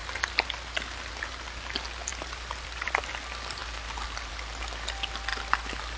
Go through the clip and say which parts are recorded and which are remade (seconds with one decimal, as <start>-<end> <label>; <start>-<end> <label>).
0.0-2.1 recorded; 2.1-3.1 remade; 3.1-5.3 recorded; 5.3-6.0 remade